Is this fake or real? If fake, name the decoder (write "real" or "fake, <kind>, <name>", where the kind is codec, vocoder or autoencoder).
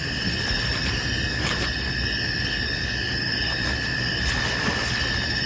real